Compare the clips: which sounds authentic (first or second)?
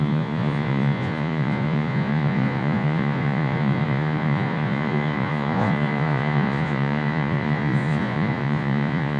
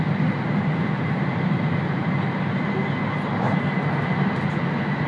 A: second